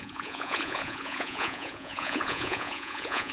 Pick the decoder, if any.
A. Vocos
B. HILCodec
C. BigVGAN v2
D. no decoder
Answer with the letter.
A